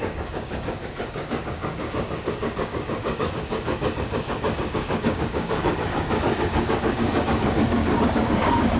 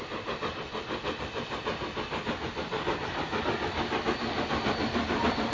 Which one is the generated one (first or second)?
first